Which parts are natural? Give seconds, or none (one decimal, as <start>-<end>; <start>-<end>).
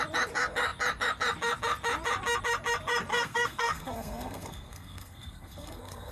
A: 0.0-3.1